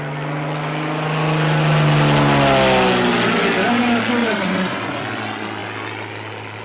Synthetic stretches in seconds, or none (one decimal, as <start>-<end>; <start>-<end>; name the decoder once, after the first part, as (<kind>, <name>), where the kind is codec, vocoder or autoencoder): 4.2-5.0 (vocoder, Vocos)